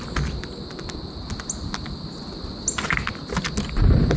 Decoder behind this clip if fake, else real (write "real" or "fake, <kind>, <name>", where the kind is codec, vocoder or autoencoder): real